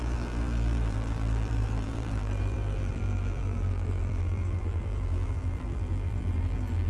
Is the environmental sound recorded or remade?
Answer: remade